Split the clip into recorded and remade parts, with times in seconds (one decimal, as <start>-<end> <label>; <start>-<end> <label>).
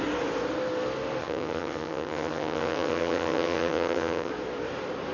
0.0-1.2 recorded; 1.2-4.3 remade; 4.3-5.1 recorded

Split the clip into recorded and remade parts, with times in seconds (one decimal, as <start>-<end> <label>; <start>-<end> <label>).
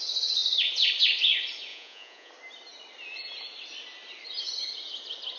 0.0-1.7 recorded; 1.7-2.3 remade; 2.3-5.4 recorded